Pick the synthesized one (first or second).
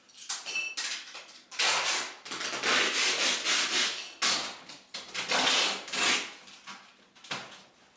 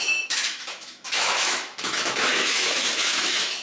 second